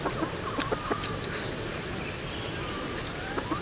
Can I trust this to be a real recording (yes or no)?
yes